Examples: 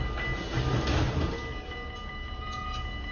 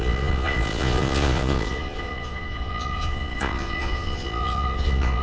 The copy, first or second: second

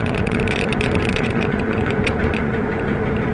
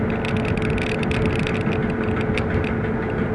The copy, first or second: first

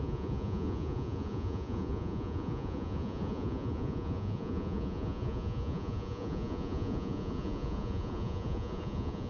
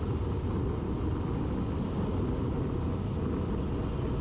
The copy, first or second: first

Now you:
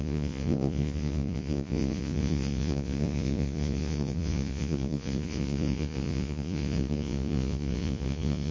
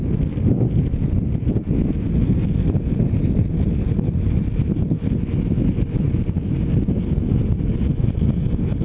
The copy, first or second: first